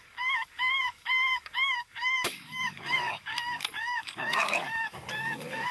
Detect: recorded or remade remade